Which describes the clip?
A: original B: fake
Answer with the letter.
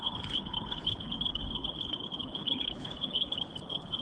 B